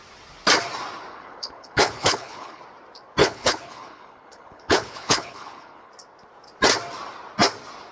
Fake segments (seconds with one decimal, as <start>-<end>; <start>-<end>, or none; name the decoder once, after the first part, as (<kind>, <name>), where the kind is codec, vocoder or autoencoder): 1.1-2.6 (codec, HILCodec); 3.2-5.9